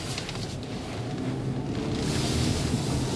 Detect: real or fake real